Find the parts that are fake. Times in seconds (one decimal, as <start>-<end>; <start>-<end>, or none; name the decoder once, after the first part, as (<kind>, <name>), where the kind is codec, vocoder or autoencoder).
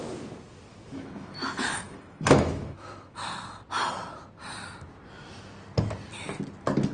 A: 0.7-3.3 (autoencoder, DAC-VAE)